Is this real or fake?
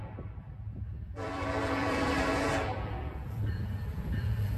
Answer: fake